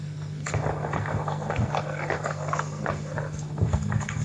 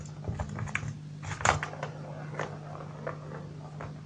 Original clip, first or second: second